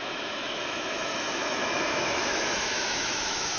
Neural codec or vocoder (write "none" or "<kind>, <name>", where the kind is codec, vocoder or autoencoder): autoencoder, DAC-VAE